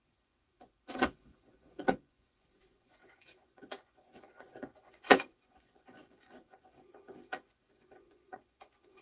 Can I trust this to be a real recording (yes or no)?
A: no